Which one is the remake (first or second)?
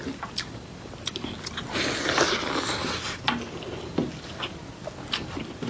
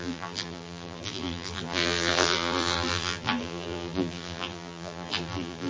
second